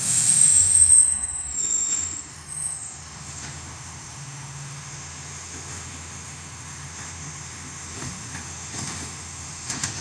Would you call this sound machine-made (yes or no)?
yes